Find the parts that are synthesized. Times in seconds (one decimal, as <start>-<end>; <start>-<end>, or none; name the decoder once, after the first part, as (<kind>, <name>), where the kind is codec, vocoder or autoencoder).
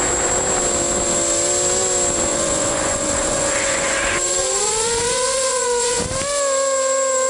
2.3-6.0 (vocoder, Vocos)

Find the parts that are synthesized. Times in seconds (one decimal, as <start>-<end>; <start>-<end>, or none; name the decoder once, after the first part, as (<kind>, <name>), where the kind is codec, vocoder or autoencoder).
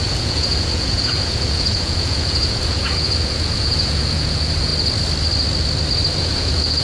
0.0-4.7 (vocoder, Vocos); 6.2-6.8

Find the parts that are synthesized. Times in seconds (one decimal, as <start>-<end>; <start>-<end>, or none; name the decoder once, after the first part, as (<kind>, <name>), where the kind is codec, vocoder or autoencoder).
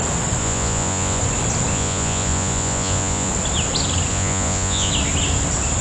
0.4-1.2 (vocoder, Vocos); 1.7-3.3; 4.1-4.9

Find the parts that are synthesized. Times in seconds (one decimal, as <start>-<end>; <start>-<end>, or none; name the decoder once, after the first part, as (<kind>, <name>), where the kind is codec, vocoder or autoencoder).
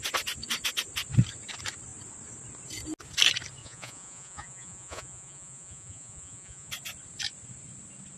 3.6-6.7 (vocoder, Vocos)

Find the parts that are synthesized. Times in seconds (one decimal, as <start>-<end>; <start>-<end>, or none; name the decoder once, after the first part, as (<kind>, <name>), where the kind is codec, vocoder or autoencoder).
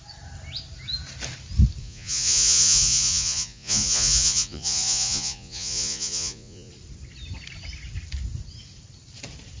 1.8-6.7 (vocoder, Vocos)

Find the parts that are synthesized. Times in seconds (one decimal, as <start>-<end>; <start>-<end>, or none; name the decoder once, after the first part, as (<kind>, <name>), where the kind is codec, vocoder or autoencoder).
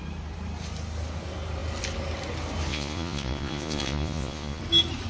2.7-4.6 (vocoder, Vocos)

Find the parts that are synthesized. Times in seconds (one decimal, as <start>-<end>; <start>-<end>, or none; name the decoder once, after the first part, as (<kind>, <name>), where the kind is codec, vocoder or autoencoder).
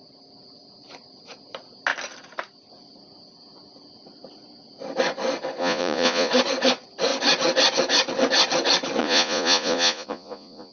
5.6-6.3 (vocoder, Vocos); 9.0-10.7